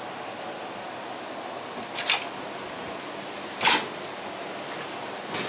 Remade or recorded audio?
recorded